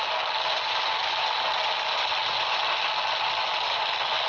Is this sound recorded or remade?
recorded